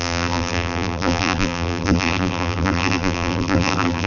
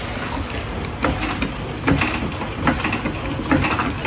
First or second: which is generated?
first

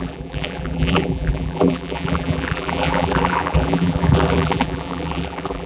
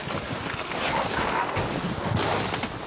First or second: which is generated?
first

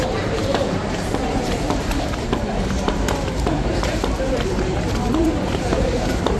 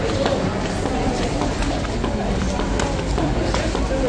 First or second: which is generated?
first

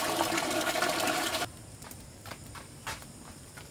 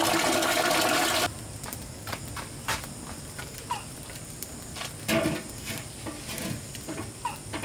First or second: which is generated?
first